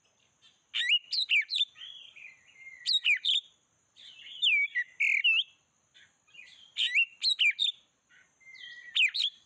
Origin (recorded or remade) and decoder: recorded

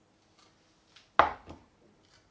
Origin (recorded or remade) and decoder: recorded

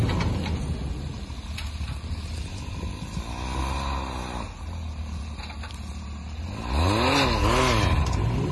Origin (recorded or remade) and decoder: recorded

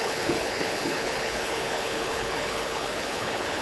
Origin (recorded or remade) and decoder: remade, codec, HILCodec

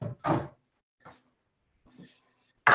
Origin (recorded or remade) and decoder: recorded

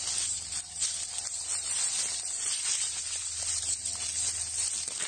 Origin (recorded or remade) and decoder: recorded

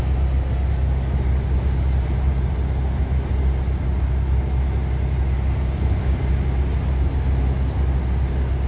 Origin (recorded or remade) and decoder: recorded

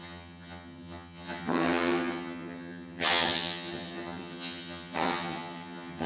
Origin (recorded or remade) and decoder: remade, vocoder, HiFi-GAN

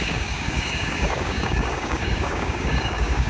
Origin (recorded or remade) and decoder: remade, codec, DAC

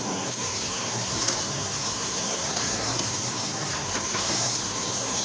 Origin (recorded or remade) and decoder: remade, codec, SNAC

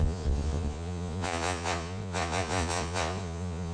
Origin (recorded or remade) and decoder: remade, vocoder, Vocos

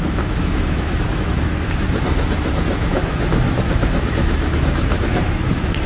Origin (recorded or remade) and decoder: remade, autoencoder, DAC-VAE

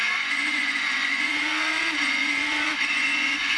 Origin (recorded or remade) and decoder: remade, vocoder, Vocos